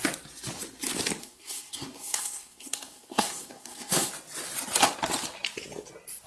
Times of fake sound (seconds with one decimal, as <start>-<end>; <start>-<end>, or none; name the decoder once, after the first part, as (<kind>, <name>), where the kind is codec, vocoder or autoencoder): 1.2-4.1 (codec, SNAC)